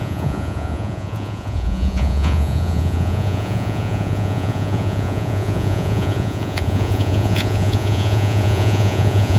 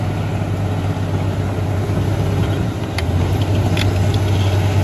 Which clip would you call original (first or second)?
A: second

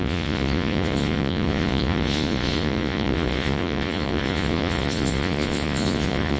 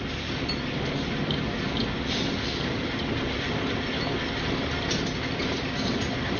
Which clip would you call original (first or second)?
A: second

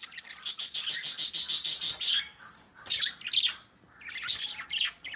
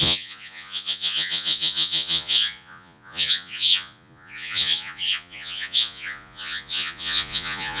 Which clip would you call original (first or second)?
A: first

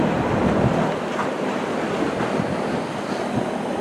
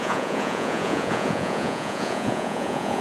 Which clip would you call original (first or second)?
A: first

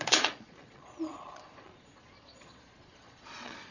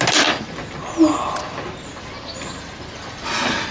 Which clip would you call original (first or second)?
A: second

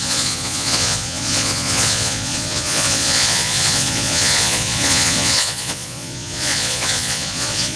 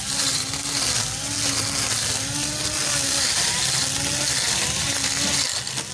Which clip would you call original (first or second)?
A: second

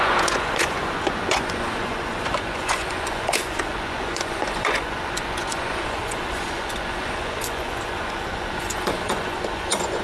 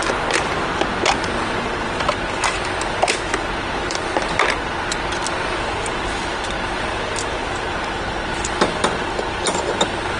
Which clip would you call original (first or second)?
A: second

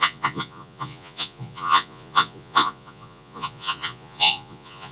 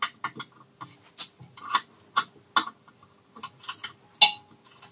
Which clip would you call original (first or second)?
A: second